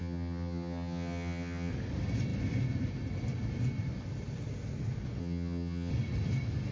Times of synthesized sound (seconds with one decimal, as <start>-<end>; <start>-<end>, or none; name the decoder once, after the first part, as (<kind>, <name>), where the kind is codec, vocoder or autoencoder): 0.0-1.7 (vocoder, HiFi-GAN); 5.2-5.9